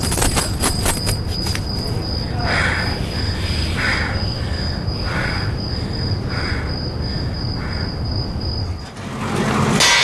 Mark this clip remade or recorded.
recorded